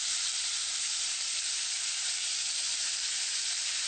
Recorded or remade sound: remade